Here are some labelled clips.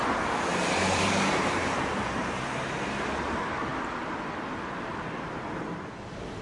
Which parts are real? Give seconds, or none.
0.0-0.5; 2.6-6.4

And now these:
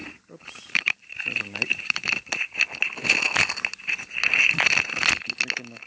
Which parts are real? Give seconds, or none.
2.2-5.9

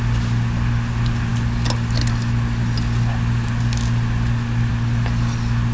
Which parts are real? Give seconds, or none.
0.0-5.7